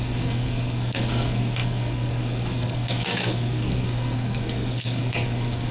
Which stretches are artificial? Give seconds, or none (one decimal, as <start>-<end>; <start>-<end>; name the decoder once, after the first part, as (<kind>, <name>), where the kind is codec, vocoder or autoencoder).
0.0-5.7 (codec, SNAC)